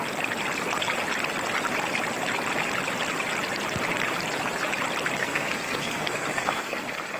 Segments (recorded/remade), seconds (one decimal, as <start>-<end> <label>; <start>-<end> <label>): 0.0-5.2 recorded; 5.2-7.2 remade

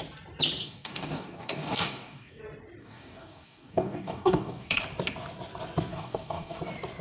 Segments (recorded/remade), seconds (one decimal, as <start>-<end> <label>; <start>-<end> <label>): 0.0-0.6 recorded; 0.6-2.4 remade; 2.4-2.8 recorded; 2.8-4.8 remade; 4.8-5.9 recorded; 5.9-6.6 remade; 6.6-7.0 recorded

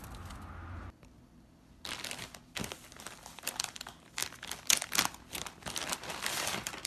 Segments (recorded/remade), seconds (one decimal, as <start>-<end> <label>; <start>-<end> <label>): 0.0-6.9 recorded

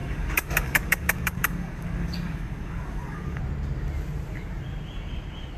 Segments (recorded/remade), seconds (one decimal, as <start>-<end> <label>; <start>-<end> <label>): 0.0-3.4 remade; 3.4-5.6 recorded

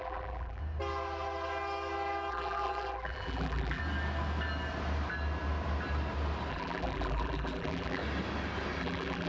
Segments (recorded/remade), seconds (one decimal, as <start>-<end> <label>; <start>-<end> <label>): 0.0-0.6 remade; 0.6-2.3 recorded; 2.3-3.8 remade; 3.8-6.5 recorded; 6.5-8.0 remade; 8.0-8.8 recorded; 8.8-9.3 remade

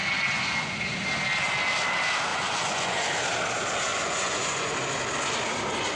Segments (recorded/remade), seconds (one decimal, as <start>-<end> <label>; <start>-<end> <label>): 0.0-0.8 remade; 0.8-2.3 recorded; 2.3-3.1 remade; 3.1-3.9 recorded; 3.9-4.7 remade; 4.7-6.0 recorded

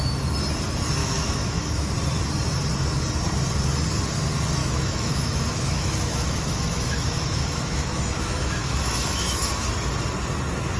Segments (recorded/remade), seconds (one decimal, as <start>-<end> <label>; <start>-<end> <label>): 0.0-1.0 recorded; 1.0-1.9 remade; 1.9-4.6 recorded; 4.6-9.5 remade; 9.5-10.8 recorded

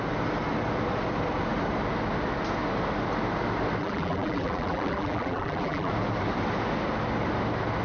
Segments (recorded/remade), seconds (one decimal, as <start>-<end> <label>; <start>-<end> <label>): 0.0-3.8 recorded; 3.8-5.9 remade; 5.9-7.8 recorded